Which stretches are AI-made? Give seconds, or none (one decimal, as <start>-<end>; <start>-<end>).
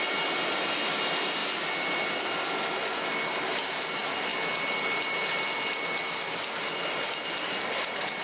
none